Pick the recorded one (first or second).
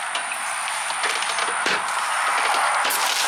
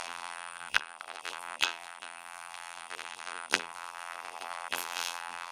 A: first